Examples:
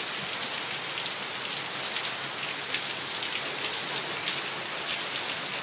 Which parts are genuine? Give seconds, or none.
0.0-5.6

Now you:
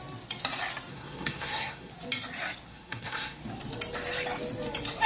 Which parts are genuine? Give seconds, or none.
0.0-0.9; 1.9-2.7; 3.4-5.1

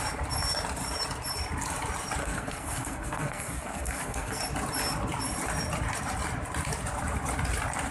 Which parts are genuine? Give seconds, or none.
0.0-2.2; 4.4-7.9

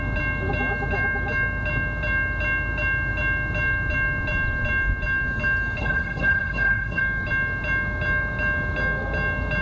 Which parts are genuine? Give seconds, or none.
0.0-5.8; 7.0-9.6

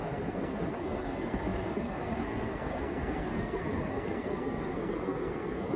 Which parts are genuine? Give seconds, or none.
none

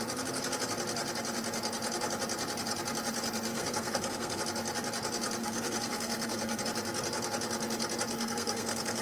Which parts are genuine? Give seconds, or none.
0.0-3.5; 4.4-5.4; 6.6-8.1

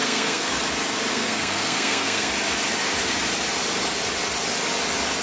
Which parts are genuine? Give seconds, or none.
0.6-1.1; 2.3-5.2

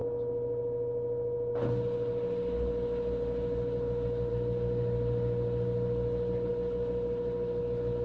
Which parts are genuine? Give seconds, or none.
0.0-8.0